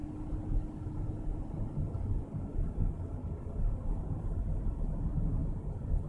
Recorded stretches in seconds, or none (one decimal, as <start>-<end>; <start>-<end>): 0.0-6.1